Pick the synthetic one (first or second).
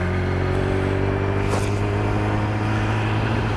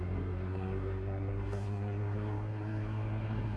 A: second